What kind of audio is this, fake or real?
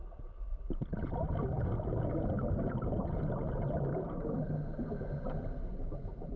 real